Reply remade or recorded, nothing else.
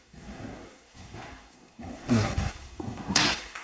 remade